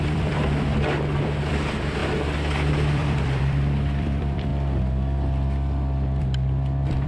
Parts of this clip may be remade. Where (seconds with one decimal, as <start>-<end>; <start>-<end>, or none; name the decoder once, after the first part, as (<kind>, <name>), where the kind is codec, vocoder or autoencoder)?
0.0-2.0 (vocoder, BigVGAN v2); 2.7-4.5; 6.2-7.1